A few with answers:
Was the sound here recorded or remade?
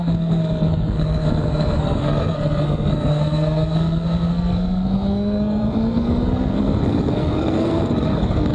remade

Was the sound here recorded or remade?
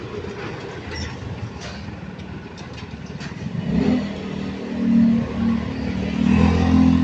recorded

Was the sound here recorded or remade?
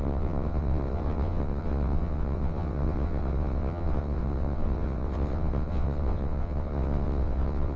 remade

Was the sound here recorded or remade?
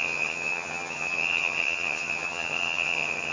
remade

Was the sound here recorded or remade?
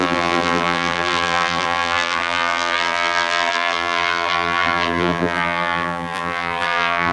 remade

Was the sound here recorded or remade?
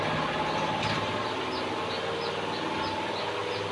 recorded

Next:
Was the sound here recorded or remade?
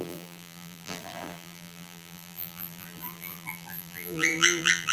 remade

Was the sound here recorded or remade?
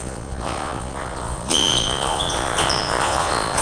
remade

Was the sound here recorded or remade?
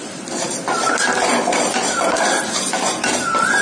recorded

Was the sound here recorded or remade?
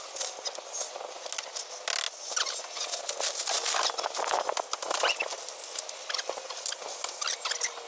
recorded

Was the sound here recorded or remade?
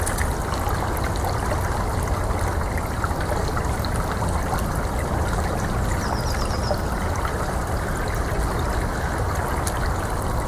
recorded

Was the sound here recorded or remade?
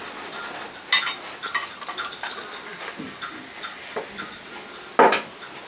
recorded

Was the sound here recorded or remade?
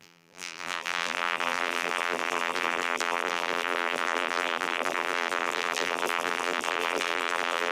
remade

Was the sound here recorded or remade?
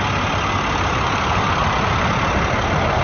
recorded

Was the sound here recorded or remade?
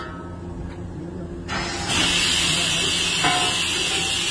recorded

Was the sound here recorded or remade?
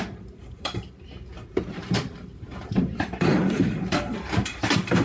remade